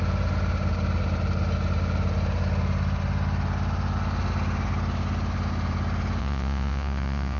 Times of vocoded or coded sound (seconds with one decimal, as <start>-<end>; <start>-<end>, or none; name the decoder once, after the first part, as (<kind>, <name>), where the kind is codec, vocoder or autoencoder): 6.2-7.4 (vocoder, Vocos)